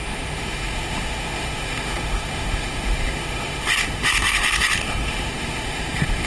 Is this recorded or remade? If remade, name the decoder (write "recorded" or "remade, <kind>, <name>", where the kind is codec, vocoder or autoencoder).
remade, autoencoder, DAC-VAE